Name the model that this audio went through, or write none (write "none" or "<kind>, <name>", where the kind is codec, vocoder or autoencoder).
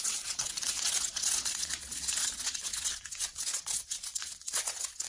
vocoder, WaveNeXt